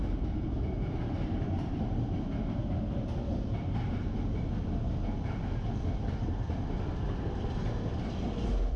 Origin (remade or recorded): recorded